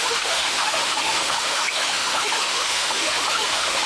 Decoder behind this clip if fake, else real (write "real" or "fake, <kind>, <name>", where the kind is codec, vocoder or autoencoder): fake, autoencoder, DAC-VAE